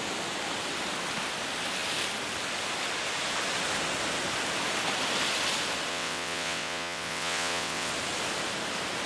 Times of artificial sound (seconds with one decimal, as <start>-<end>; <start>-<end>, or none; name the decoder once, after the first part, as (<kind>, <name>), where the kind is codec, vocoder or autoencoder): 5.9-7.9 (vocoder, WaveNeXt)

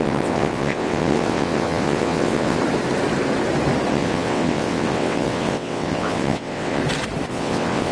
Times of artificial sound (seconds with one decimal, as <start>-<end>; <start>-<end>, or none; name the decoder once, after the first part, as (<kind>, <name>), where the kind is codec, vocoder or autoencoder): 0.0-2.6 (vocoder, WaveNeXt); 3.9-6.8; 7.3-7.9